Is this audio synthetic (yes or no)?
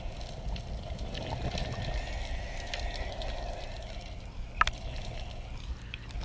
no